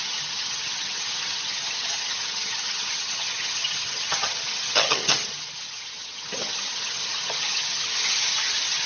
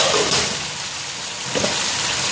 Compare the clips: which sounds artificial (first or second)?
first